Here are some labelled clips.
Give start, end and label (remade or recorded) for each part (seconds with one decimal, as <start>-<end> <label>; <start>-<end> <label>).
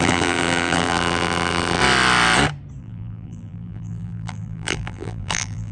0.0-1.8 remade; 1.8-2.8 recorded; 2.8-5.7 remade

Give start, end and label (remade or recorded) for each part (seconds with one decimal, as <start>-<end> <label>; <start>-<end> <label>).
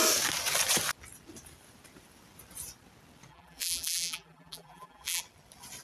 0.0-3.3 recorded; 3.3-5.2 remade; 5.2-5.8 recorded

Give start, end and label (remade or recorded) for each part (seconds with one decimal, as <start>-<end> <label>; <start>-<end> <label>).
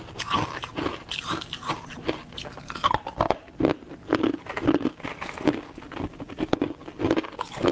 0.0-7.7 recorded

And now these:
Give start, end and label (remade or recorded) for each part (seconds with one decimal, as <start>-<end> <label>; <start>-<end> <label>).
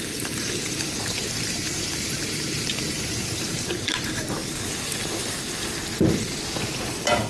0.0-4.4 remade; 4.4-7.3 recorded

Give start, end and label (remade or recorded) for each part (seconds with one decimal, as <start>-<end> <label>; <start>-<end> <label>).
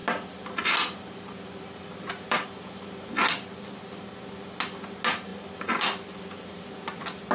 0.0-2.8 remade; 2.8-5.3 recorded; 5.3-6.7 remade; 6.7-7.3 recorded